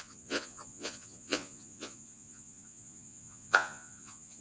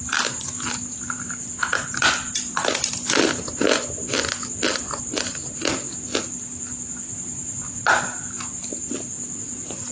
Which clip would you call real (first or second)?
second